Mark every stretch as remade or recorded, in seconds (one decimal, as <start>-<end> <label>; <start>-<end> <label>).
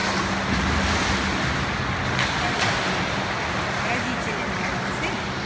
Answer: 0.0-5.5 recorded